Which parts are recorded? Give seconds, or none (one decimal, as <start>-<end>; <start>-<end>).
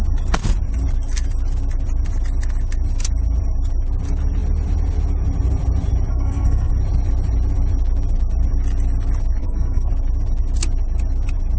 0.0-6.1; 6.7-9.4; 9.9-11.6